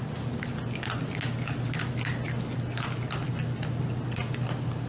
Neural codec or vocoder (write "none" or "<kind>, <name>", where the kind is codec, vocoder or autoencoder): none